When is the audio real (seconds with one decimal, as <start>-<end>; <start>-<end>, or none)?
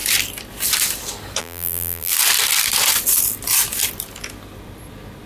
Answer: 0.0-1.4; 2.1-5.3